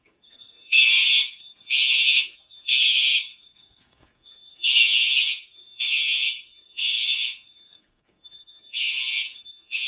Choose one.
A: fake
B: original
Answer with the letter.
A